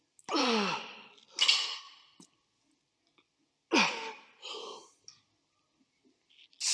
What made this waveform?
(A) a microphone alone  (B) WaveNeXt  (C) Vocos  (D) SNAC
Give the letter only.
A